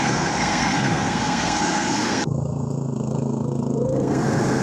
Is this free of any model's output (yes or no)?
no